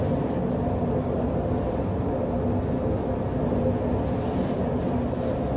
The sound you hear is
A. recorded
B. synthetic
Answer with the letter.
A